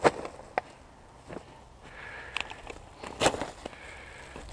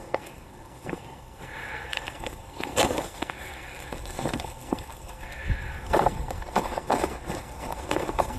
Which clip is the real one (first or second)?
first